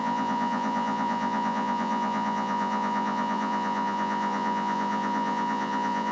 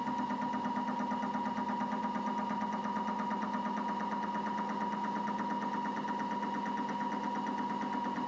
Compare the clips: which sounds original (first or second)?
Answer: second